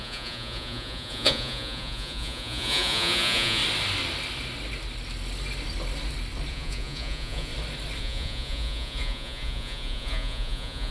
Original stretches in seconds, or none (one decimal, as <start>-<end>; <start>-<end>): 3.6-6.5; 7.5-8.0